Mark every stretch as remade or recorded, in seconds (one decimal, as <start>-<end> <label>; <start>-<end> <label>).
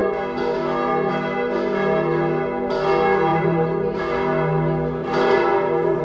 0.0-3.3 recorded; 3.3-4.0 remade; 4.0-5.0 recorded; 5.0-6.0 remade